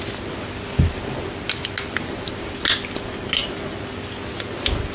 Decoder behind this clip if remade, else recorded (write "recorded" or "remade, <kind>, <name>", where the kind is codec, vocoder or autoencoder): recorded